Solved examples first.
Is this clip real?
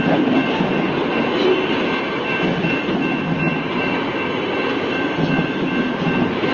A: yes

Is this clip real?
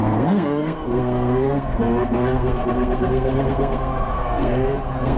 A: no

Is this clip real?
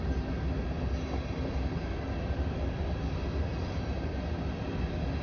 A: yes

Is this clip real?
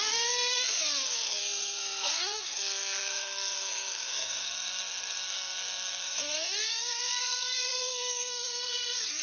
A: no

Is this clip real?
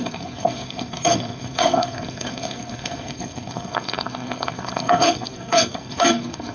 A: no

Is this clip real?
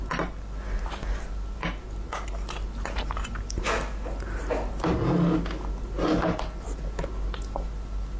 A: yes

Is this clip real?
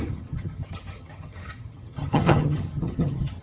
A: no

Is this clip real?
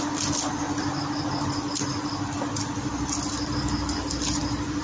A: yes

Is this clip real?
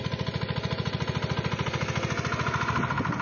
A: yes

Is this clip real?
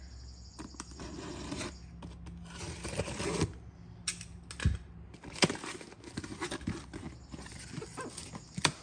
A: yes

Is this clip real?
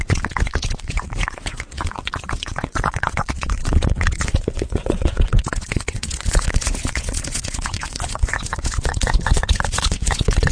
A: no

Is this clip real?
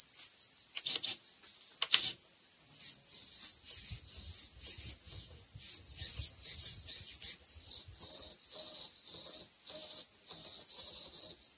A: yes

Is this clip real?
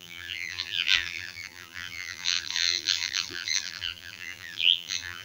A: no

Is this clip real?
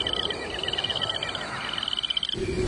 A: yes